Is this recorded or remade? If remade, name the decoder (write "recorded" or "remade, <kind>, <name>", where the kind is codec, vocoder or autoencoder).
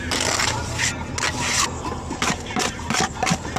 recorded